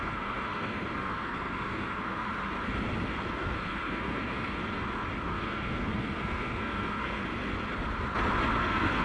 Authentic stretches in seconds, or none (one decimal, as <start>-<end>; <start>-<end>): 2.2-3.3; 4.6-5.3; 7.2-8.6